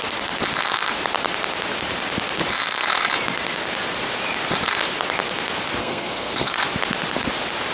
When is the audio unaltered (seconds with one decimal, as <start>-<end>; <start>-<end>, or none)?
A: 0.0-5.8; 6.6-7.7